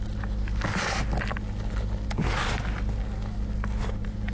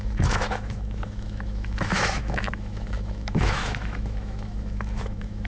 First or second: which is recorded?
first